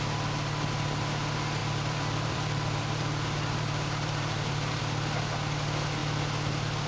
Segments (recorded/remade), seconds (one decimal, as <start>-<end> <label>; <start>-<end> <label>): 0.0-1.6 recorded; 1.6-4.8 remade; 4.8-6.9 recorded